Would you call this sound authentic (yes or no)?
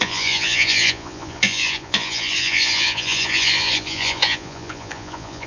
no